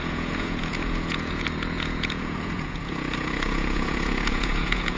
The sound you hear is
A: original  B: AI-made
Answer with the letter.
B